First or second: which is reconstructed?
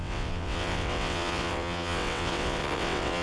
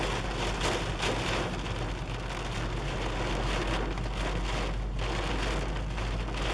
first